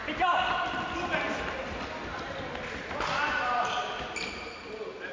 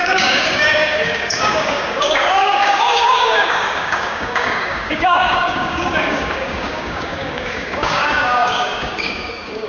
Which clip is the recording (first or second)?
first